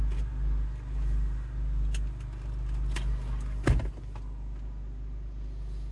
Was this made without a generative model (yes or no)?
yes